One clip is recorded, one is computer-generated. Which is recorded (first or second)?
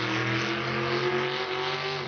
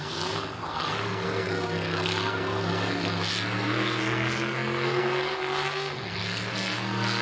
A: first